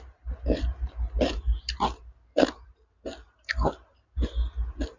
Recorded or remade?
remade